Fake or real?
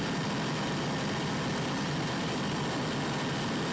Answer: real